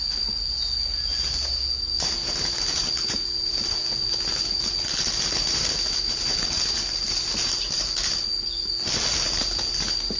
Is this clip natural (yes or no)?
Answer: yes